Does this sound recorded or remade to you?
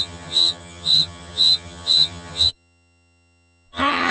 remade